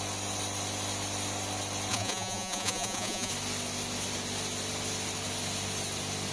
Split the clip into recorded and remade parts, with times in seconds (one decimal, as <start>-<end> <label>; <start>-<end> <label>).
0.0-1.9 recorded; 1.9-3.3 remade; 3.3-6.3 recorded